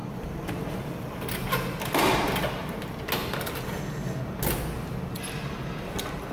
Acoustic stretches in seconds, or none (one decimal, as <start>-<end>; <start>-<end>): 2.6-6.3